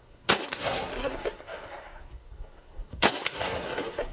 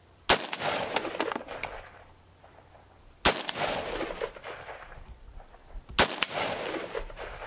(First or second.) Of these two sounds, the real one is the second